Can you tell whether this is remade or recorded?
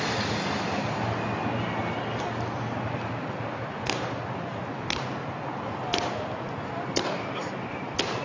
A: recorded